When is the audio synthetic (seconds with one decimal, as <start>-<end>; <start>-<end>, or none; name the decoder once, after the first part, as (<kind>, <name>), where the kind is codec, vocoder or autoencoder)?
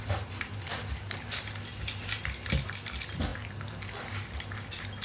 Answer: none